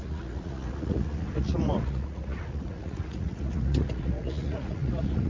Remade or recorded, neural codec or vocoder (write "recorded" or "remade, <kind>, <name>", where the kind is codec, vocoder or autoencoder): remade, vocoder, Vocos